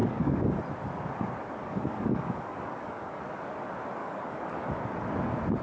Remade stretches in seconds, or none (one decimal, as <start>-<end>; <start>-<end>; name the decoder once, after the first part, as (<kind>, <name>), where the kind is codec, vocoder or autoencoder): 0.0-0.6 (codec, DAC); 1.6-3.2; 4.0-4.7